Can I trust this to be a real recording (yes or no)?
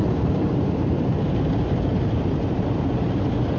no